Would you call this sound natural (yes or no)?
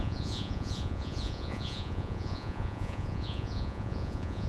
no